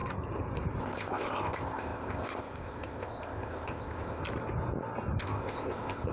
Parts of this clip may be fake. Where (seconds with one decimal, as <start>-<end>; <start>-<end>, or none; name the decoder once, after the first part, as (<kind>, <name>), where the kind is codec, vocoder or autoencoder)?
0.8-4.2 (codec, ZipCodec); 5.2-6.1